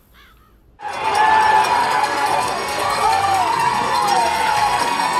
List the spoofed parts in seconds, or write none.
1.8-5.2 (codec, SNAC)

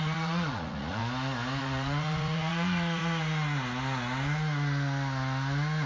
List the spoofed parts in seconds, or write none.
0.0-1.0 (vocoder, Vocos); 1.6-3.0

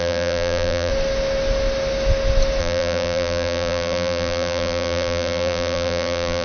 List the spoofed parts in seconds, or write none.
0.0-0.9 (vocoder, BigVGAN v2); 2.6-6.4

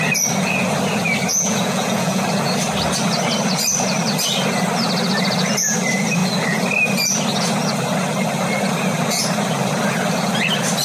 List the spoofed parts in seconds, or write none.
1.3-2.2 (vocoder, Vocos)

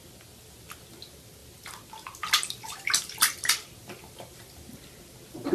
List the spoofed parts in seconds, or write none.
none